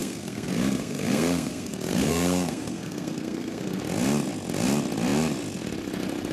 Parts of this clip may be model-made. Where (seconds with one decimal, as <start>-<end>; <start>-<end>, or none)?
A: 0.0-3.8